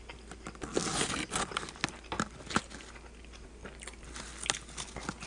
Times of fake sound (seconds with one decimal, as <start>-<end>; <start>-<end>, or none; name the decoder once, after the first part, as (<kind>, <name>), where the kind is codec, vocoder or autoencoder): none